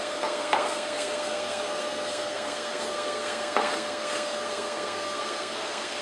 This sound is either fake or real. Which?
fake